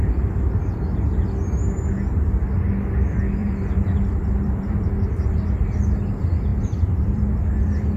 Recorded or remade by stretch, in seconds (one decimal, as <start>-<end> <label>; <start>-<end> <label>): 0.0-0.7 remade; 0.7-3.4 recorded; 3.4-4.9 remade; 4.9-6.5 recorded; 6.5-7.3 remade; 7.3-8.0 recorded